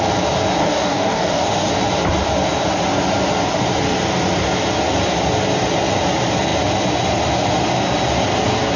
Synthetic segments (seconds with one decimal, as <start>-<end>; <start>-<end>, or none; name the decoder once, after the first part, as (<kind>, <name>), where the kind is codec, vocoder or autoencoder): 0.6-1.7 (codec, DAC)